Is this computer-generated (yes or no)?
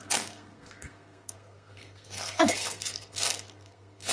yes